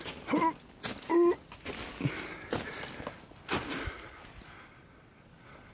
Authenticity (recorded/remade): recorded